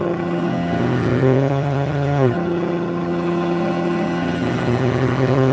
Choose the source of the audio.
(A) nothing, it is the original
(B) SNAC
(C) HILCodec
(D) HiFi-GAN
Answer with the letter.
D